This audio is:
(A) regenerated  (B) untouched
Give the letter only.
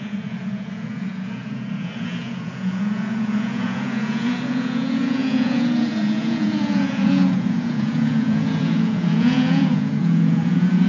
A